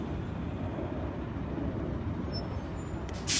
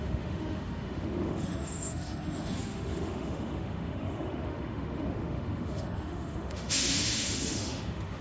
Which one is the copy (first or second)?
second